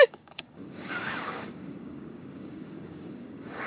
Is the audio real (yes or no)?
no